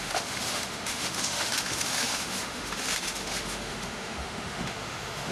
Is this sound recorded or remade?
remade